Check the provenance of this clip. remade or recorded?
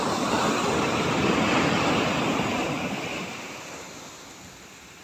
recorded